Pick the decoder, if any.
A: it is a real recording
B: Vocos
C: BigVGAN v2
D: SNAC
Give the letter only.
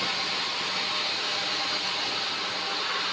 A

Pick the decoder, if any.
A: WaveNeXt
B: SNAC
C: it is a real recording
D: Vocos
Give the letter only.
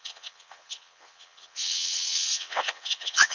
A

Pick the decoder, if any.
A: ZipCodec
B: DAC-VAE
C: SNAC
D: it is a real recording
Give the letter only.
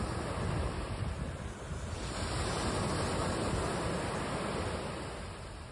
D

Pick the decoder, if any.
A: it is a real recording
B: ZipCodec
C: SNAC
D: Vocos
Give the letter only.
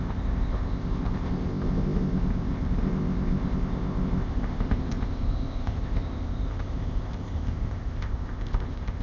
B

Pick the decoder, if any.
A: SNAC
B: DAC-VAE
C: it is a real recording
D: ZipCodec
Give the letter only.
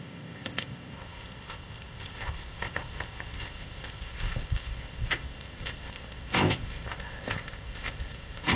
D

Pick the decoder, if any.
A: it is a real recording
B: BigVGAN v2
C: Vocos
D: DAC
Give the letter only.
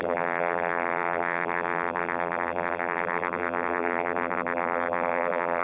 B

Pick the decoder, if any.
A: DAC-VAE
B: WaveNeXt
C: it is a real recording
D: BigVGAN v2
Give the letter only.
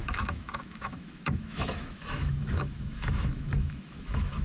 A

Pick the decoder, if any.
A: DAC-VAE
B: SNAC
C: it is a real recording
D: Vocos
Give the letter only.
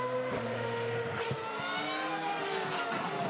C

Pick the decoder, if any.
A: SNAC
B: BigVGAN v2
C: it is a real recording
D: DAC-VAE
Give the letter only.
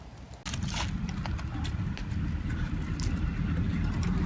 C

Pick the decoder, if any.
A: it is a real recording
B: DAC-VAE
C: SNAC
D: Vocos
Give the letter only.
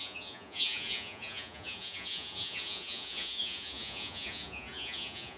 D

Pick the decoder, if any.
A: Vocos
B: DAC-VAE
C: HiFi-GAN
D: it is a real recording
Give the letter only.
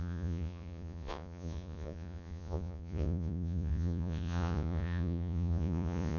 A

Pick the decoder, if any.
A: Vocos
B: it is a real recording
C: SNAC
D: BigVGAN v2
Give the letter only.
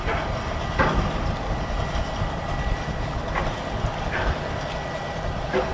B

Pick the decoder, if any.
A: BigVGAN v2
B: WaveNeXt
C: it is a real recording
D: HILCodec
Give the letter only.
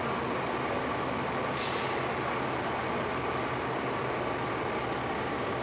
C